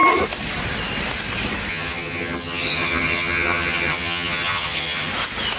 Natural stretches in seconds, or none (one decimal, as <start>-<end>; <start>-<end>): 0.0-1.7; 5.1-5.6